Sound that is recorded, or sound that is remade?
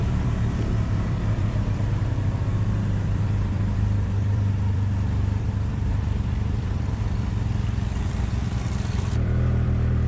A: remade